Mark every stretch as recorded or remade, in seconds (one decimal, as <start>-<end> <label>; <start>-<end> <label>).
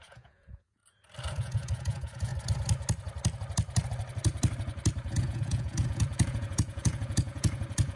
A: 0.0-0.8 remade; 0.8-1.3 recorded; 1.3-2.3 remade; 2.3-5.0 recorded; 5.0-8.0 remade